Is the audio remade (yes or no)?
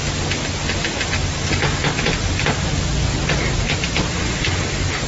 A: no